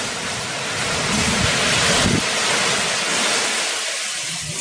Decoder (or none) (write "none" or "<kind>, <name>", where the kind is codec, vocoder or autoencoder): none